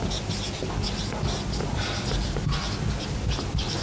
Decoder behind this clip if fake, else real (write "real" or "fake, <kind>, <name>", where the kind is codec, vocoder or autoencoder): real